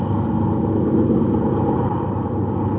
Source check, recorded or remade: recorded